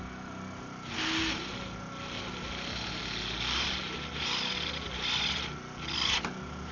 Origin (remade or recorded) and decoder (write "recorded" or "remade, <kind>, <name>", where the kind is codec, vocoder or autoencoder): recorded